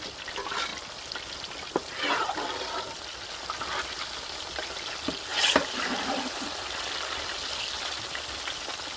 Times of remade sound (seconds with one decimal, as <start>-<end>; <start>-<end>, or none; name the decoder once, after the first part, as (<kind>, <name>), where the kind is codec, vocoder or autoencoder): none